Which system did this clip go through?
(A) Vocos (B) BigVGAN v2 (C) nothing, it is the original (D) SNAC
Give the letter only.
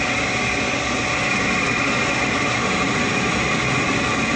C